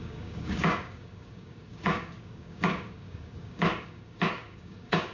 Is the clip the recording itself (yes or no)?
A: no